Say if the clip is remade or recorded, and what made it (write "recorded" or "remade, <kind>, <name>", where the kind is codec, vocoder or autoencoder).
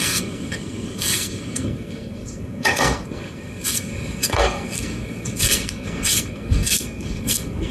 remade, codec, SNAC